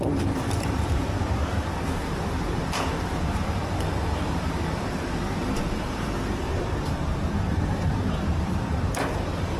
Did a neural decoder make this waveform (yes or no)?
yes